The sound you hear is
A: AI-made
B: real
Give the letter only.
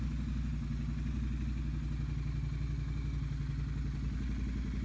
B